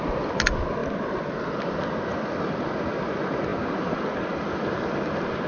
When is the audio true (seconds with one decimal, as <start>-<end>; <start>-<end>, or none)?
0.0-5.5